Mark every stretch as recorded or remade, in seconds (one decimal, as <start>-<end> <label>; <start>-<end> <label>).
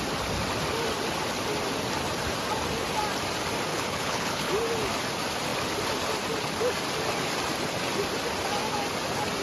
0.0-3.7 recorded; 3.7-4.5 remade; 4.5-9.4 recorded